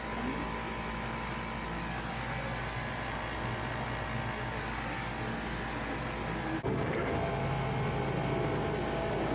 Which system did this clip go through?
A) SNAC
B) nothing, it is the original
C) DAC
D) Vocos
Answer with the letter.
B